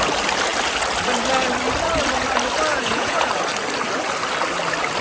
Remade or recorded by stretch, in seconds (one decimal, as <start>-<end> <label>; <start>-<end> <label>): 0.0-2.7 recorded; 2.7-3.3 remade; 3.3-5.0 recorded